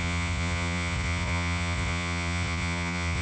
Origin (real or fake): fake